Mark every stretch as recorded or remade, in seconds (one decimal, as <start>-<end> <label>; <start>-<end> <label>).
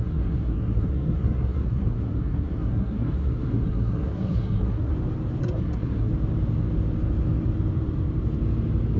0.0-4.9 remade; 4.9-5.4 recorded; 5.4-6.1 remade; 6.1-9.0 recorded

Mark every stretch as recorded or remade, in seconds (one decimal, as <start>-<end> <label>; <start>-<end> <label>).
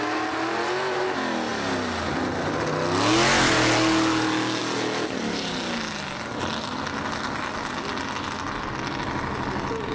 0.0-9.9 recorded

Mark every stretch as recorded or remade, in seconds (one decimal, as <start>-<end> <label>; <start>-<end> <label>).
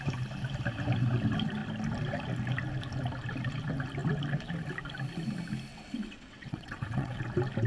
0.0-5.7 recorded; 5.7-7.2 remade; 7.2-7.7 recorded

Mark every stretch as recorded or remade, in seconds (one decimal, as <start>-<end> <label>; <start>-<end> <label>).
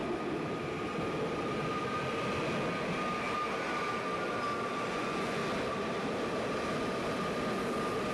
0.0-4.9 recorded; 4.9-5.4 remade; 5.4-8.1 recorded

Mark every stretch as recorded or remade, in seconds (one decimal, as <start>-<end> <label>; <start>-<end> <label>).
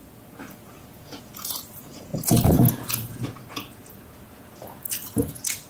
0.0-5.7 remade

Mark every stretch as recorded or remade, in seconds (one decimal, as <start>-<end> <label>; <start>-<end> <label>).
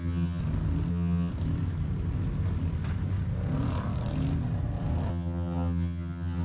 0.0-0.4 remade; 0.4-0.9 recorded; 0.9-1.3 remade; 1.3-5.1 recorded; 5.1-6.4 remade